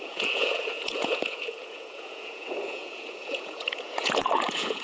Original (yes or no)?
no